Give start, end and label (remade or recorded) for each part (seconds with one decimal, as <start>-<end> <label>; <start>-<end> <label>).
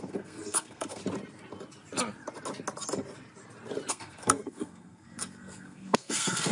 0.0-1.0 remade; 1.0-3.9 recorded; 3.9-6.5 remade